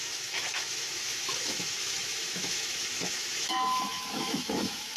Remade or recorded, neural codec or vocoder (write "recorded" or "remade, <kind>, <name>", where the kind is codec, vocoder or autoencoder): remade, autoencoder, DAC-VAE